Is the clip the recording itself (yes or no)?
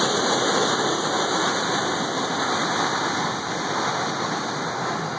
yes